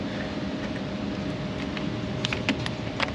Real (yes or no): yes